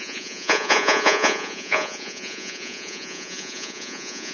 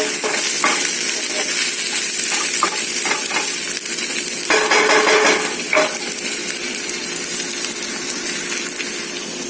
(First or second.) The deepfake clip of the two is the first